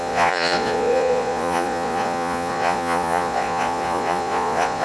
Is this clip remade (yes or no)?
yes